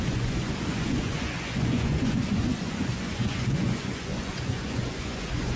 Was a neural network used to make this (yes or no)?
yes